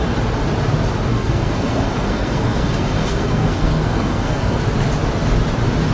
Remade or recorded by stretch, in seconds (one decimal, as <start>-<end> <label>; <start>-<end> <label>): 0.0-1.1 recorded; 1.1-4.6 remade; 4.6-5.9 recorded